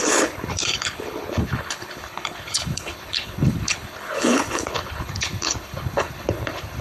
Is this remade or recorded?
remade